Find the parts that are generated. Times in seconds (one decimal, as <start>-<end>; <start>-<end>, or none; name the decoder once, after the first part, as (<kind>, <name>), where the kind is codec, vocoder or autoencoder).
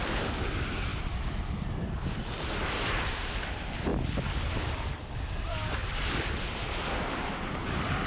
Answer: 0.9-3.4 (vocoder, BigVGAN v2); 3.9-5.2; 5.8-6.4